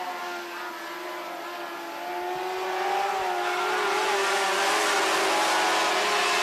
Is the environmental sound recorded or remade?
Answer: recorded